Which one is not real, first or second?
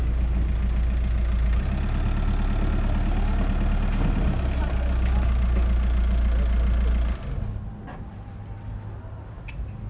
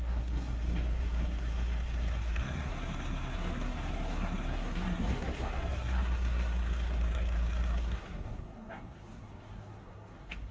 second